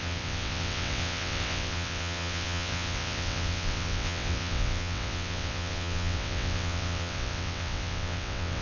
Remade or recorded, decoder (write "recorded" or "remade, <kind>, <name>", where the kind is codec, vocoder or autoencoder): remade, vocoder, WaveNeXt